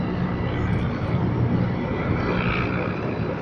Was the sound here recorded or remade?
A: recorded